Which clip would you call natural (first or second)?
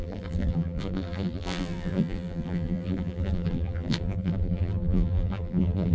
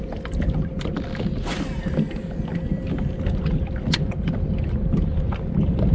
second